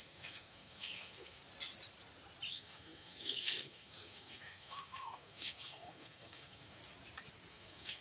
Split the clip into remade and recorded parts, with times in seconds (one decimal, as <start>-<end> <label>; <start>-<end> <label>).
0.0-1.4 remade; 1.4-2.5 recorded; 2.5-6.8 remade; 6.8-7.5 recorded; 7.5-8.0 remade